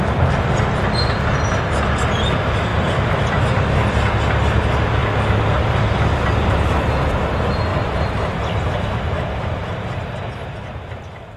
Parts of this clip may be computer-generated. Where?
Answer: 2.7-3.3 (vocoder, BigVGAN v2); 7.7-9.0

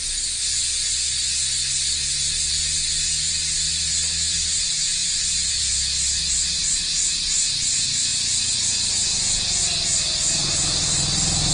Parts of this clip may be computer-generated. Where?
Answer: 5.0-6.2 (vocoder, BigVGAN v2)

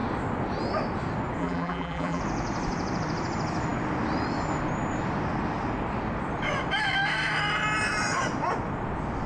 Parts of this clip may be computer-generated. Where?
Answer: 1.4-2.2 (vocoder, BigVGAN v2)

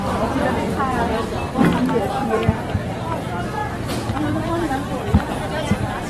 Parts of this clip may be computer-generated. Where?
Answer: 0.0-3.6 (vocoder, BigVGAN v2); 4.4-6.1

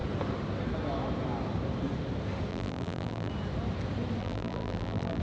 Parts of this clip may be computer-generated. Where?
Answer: 2.5-3.3 (vocoder, BigVGAN v2); 4.2-5.2

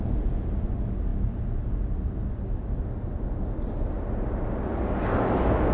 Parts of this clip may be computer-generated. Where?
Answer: none

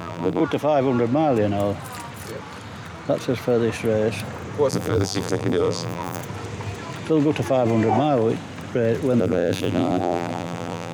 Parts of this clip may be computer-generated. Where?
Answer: 0.0-0.4 (vocoder, BigVGAN v2); 4.7-6.2; 9.2-10.9

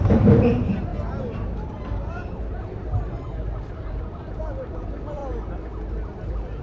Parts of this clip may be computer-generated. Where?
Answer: 0.0-0.9 (vocoder, BigVGAN v2); 3.9-5.2